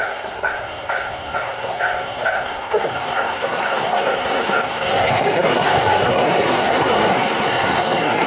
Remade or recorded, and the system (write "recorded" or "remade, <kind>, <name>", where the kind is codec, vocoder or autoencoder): remade, codec, SNAC